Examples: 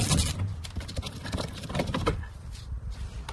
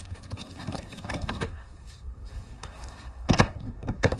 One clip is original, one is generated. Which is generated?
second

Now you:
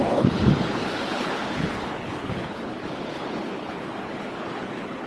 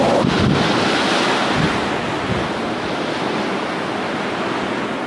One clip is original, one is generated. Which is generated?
first